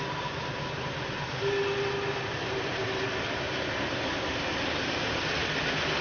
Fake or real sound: real